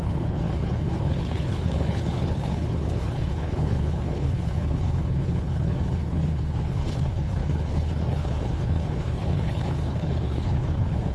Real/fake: fake